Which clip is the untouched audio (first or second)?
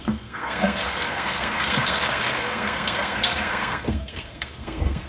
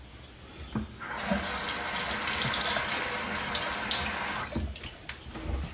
second